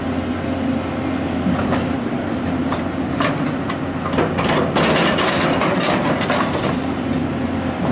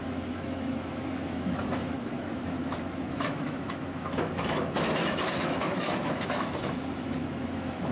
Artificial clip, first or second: second